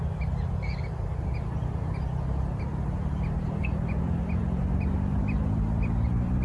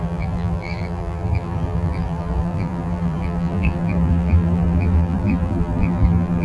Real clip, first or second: first